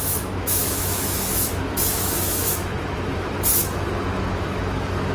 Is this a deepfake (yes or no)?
yes